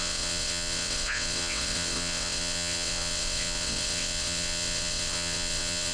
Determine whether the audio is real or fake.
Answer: fake